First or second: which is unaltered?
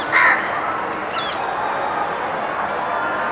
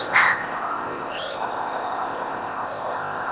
first